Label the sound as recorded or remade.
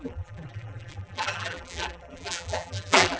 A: remade